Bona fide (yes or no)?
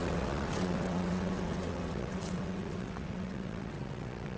no